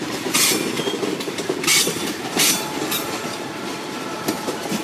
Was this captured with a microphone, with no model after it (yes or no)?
no